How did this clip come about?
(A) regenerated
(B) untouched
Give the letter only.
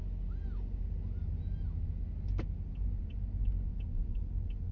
B